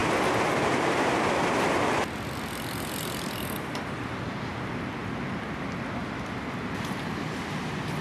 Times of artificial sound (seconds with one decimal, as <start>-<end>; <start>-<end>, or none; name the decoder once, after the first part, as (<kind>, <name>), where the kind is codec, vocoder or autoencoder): none